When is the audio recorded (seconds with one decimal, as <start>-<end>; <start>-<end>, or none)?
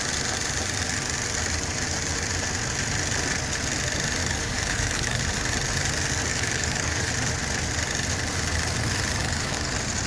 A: 0.0-4.2; 5.2-6.3; 7.1-9.2; 9.7-10.1